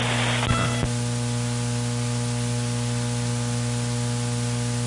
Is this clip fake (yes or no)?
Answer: no